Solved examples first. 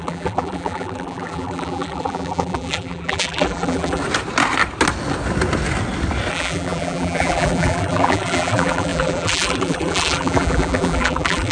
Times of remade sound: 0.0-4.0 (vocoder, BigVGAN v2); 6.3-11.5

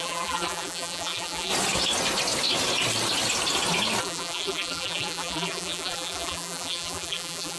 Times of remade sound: 0.0-1.5 (vocoder, BigVGAN v2); 4.0-7.6

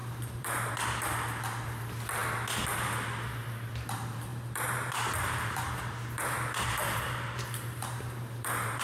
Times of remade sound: 0.0-0.7 (vocoder, BigVGAN v2); 4.3-8.8

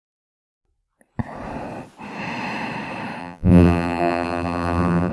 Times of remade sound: 3.2-5.1 (vocoder, BigVGAN v2)